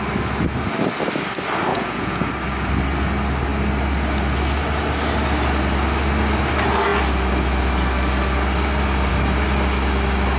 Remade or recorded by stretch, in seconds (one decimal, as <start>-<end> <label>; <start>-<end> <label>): 0.0-1.7 recorded; 1.7-2.3 remade; 2.3-10.4 recorded